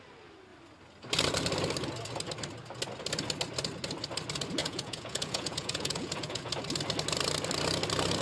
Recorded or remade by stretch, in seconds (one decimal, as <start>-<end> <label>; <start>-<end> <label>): 0.0-4.6 recorded; 4.6-6.5 remade; 6.5-8.2 recorded